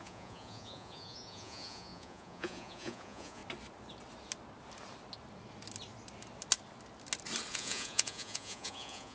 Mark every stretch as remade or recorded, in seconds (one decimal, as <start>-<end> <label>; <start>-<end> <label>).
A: 0.0-3.4 remade; 3.4-7.5 recorded; 7.5-9.1 remade